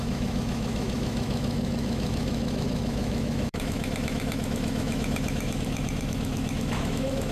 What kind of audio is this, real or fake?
fake